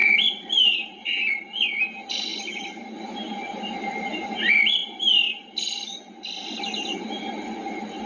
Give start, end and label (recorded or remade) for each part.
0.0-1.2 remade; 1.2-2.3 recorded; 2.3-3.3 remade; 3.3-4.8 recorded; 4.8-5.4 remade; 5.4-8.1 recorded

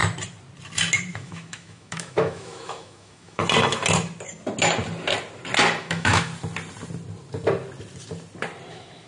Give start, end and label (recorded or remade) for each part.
0.0-1.1 recorded; 1.1-3.4 remade; 3.4-5.8 recorded; 5.8-6.3 remade; 6.3-8.7 recorded; 8.7-9.1 remade

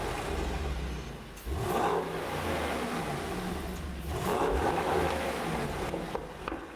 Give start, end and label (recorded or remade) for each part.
0.0-1.9 recorded; 1.9-3.0 remade; 3.0-4.3 recorded; 4.3-5.4 remade; 5.4-6.8 recorded

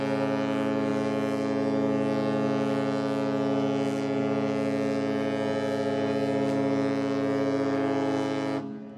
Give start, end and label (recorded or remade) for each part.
0.0-9.0 recorded

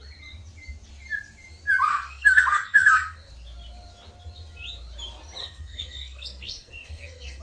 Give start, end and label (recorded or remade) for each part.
0.0-1.9 recorded; 1.9-3.3 remade; 3.3-5.4 recorded; 5.4-7.4 remade